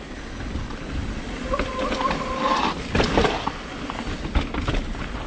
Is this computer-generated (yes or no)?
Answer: no